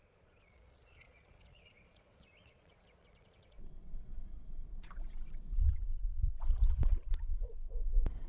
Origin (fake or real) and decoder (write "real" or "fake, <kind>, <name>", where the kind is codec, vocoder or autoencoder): fake, vocoder, Vocos